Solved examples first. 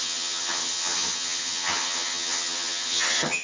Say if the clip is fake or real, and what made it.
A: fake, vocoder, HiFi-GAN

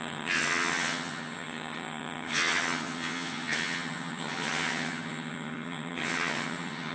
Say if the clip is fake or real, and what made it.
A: fake, vocoder, HiFi-GAN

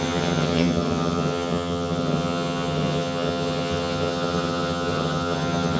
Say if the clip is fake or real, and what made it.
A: fake, vocoder, HiFi-GAN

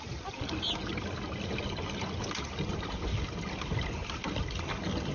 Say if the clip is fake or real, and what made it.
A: real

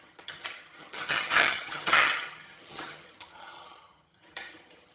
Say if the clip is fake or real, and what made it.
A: fake, vocoder, HiFi-GAN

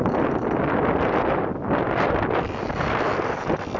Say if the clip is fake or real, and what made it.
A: real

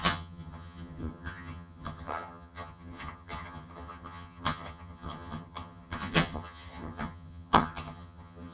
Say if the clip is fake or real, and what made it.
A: fake, vocoder, HiFi-GAN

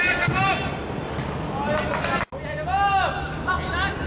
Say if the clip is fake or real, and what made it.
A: real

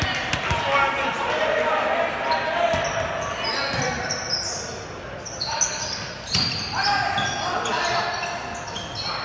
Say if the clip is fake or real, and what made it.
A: real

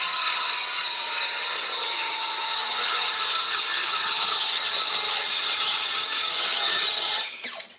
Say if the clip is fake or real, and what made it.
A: fake, vocoder, HiFi-GAN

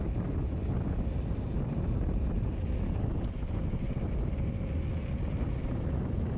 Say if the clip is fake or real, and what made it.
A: real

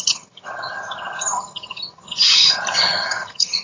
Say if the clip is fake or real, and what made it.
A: fake, vocoder, HiFi-GAN